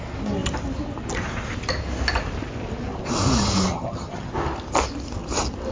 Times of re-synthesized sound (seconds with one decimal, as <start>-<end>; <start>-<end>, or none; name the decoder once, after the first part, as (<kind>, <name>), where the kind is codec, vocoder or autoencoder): 3.7-4.3 (vocoder, HiFi-GAN)